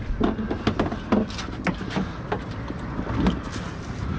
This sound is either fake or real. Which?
real